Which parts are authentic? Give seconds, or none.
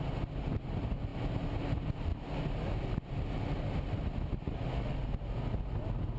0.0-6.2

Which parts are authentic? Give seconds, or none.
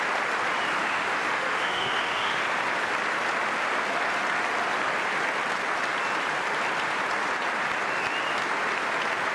0.0-0.8; 2.4-9.3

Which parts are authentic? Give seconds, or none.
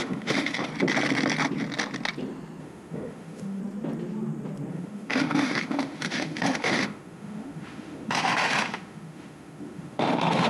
0.7-2.6; 3.6-4.7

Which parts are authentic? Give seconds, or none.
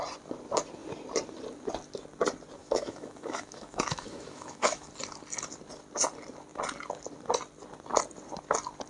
0.0-2.6; 4.9-8.9